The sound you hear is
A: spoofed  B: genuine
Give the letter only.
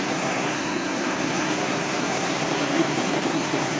A